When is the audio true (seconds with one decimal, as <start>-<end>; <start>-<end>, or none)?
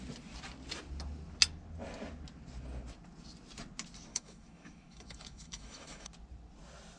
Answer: 0.0-4.1; 6.1-7.0